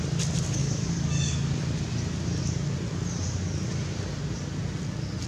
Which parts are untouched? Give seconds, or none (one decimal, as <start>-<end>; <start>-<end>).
0.0-0.6; 1.6-5.3